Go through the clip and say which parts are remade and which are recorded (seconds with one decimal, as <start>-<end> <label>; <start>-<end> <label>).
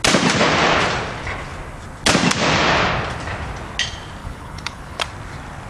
0.0-4.2 recorded; 4.2-5.0 remade; 5.0-5.7 recorded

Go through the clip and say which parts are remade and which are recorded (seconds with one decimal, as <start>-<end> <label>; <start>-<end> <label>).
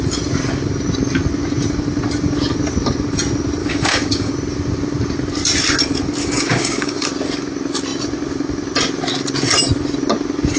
0.0-3.6 recorded; 3.6-4.3 remade; 4.3-6.2 recorded; 6.2-7.0 remade; 7.0-10.6 recorded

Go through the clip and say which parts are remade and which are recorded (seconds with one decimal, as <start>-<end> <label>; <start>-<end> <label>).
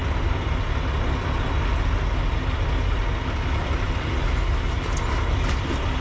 0.0-6.0 recorded